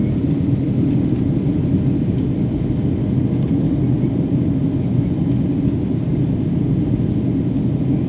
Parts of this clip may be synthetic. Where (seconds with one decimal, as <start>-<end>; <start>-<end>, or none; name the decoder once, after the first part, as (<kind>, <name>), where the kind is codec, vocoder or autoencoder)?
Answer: none